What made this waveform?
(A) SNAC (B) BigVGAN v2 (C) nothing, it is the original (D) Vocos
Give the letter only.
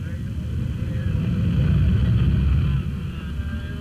C